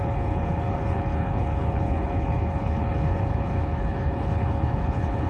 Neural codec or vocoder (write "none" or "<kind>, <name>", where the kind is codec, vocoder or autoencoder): codec, HILCodec